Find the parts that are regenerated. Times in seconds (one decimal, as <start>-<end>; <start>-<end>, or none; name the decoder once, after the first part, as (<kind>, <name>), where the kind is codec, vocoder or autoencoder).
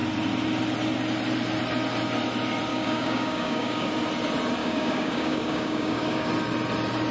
2.7-3.9 (codec, DAC); 4.6-6.3